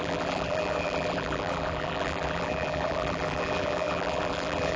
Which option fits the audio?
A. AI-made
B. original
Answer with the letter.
A